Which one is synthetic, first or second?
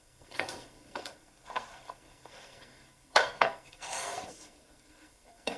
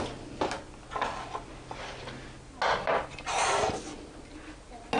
first